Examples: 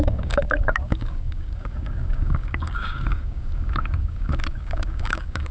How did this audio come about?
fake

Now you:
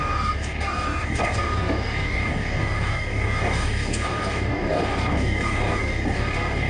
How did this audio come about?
fake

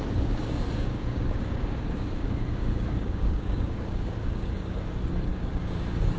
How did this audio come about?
fake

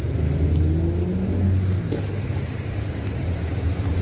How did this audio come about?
real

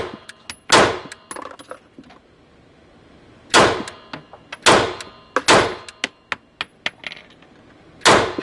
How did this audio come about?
real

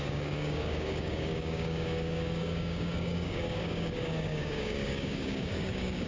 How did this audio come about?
fake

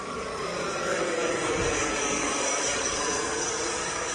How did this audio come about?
fake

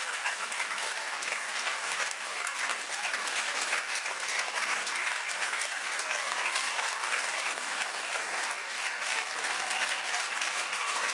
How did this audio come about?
fake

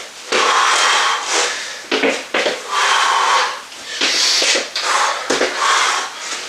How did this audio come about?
real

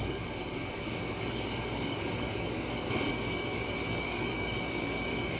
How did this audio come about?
fake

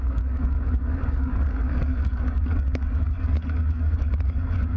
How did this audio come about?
fake